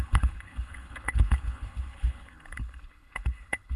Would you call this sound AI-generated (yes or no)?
yes